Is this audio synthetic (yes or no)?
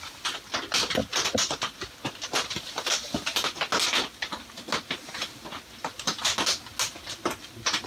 no